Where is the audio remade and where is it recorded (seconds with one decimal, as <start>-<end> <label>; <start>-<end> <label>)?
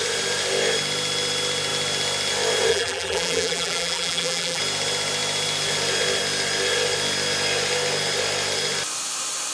0.0-2.7 recorded; 2.7-4.6 remade; 4.6-9.5 recorded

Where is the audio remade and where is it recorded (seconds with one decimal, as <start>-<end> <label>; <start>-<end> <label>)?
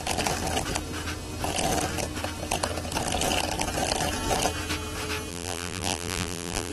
0.0-5.3 recorded; 5.3-6.7 remade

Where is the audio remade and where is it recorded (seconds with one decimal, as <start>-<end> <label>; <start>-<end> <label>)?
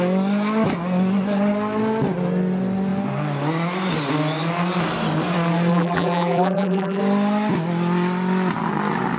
0.0-5.7 recorded; 5.7-7.0 remade; 7.0-9.2 recorded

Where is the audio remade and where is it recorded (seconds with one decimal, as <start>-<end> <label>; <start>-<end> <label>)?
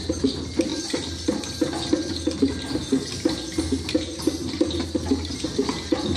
0.0-6.2 recorded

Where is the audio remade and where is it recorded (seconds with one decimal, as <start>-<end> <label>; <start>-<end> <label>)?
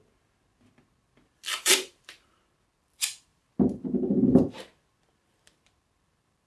0.0-1.5 recorded; 1.5-2.4 remade; 2.4-6.5 recorded